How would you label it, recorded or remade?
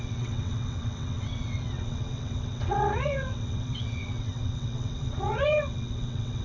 remade